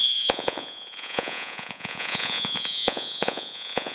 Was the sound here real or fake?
fake